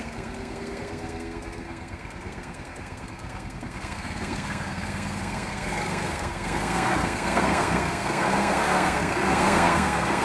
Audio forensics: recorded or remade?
remade